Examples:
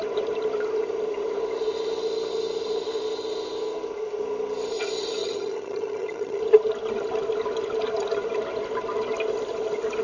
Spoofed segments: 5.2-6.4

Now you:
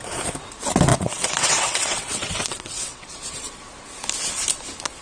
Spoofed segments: 0.9-3.2

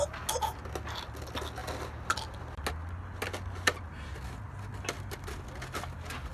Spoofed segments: none